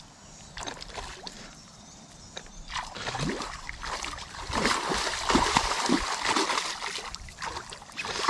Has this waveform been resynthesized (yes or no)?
yes